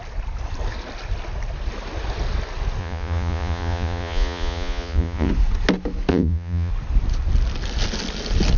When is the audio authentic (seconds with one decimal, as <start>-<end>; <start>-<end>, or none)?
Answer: 0.0-2.8; 5.3-6.1; 6.7-8.6